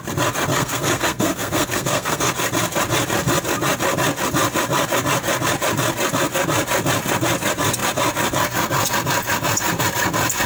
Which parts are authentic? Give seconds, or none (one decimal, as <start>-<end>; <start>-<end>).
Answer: 0.0-0.5; 2.3-10.5